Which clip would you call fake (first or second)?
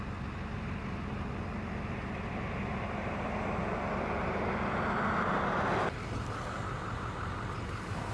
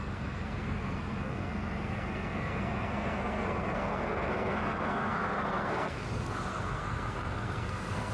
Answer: second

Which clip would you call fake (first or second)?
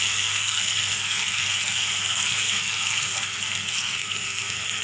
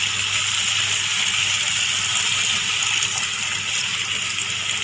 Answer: first